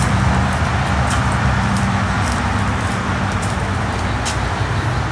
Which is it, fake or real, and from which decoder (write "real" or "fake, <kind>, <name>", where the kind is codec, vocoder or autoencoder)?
fake, vocoder, BigVGAN v2